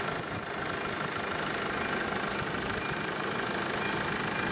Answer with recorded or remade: recorded